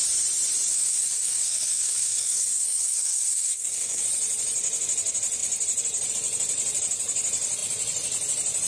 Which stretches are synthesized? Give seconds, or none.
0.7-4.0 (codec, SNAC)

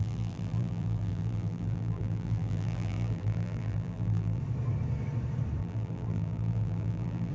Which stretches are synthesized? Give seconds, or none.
0.0-4.4 (vocoder, BigVGAN v2); 5.6-7.3

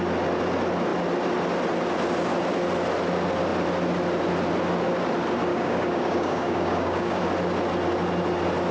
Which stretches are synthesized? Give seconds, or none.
5.5-7.2 (codec, DAC)